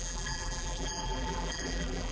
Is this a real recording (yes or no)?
no